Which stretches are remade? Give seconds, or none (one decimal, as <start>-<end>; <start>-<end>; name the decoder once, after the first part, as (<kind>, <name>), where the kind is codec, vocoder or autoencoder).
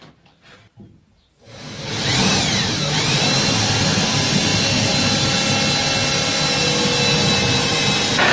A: 1.1-3.2 (vocoder, BigVGAN v2)